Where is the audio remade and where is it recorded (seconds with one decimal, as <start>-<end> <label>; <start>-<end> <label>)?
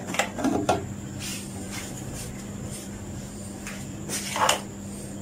0.0-1.3 recorded; 1.3-4.4 remade; 4.4-5.2 recorded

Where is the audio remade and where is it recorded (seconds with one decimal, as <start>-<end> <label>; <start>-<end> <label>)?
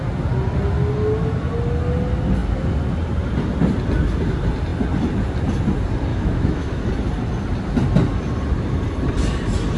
0.0-6.1 recorded; 6.1-6.9 remade; 6.9-9.8 recorded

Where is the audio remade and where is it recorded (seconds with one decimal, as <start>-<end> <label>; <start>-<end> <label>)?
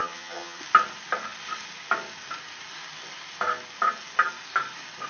0.0-0.6 remade; 0.6-5.1 recorded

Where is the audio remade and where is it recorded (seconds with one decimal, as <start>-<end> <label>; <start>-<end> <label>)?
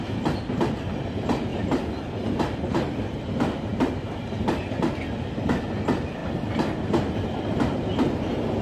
0.0-8.6 recorded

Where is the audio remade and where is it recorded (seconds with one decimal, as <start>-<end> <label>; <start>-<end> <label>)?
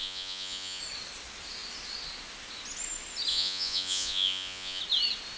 0.0-0.8 remade; 0.8-3.3 recorded; 3.3-4.8 remade; 4.8-5.4 recorded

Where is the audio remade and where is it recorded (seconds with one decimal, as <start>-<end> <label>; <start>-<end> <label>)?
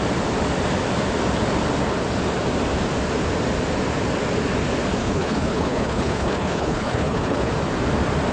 0.0-5.0 recorded; 5.0-7.5 remade; 7.5-8.3 recorded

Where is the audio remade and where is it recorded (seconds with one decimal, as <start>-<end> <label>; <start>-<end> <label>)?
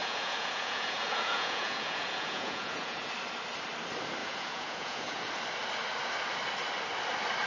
0.0-3.1 remade; 3.1-4.2 recorded; 4.2-5.3 remade; 5.3-7.5 recorded